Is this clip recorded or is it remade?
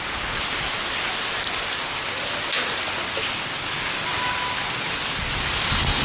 recorded